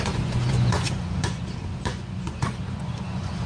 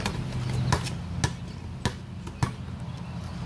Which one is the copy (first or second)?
first